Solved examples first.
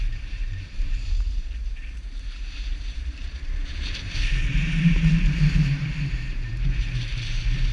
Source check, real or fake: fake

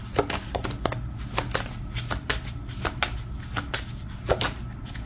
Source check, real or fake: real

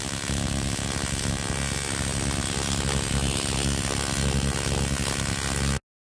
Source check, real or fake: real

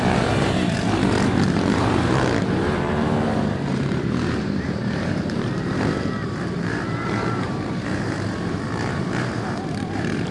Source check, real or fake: fake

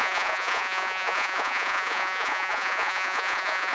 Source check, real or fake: fake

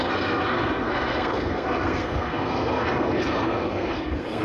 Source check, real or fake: fake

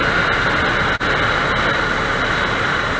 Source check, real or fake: real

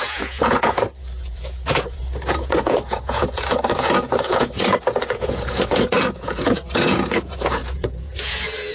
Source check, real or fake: fake